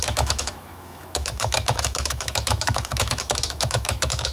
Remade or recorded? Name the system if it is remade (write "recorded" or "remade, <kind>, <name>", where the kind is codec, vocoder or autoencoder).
remade, autoencoder, DAC-VAE